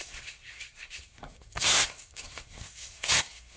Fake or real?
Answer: fake